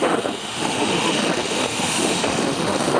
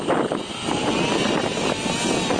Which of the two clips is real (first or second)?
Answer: second